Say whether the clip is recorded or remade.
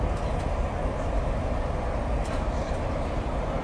recorded